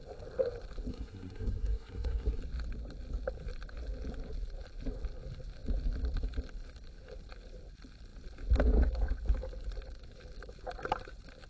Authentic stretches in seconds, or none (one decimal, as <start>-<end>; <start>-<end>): 0.0-0.9; 2.4-11.5